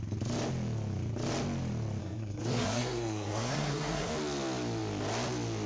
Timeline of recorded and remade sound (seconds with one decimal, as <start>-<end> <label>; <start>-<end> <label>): 0.0-2.0 recorded; 2.0-4.1 remade; 4.1-5.7 recorded